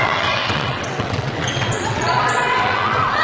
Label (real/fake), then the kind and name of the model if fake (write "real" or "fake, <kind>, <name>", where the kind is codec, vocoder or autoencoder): fake, vocoder, WaveNeXt